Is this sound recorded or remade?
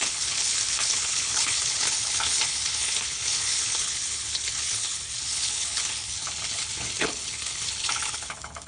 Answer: remade